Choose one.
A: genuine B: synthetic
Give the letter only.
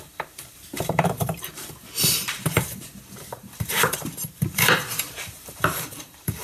B